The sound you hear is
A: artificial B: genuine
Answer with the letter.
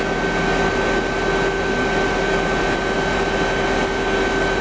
B